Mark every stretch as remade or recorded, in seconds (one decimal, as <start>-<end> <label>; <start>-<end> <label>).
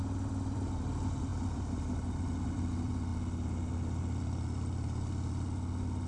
0.0-6.1 recorded